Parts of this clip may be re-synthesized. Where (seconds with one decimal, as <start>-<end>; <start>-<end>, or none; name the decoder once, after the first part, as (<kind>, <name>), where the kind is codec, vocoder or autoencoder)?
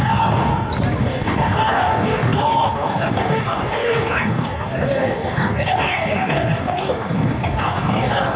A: 0.0-0.5 (codec, DAC); 1.0-8.4